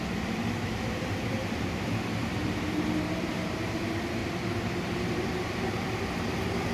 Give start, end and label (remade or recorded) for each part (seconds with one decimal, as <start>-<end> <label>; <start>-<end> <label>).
0.0-6.7 remade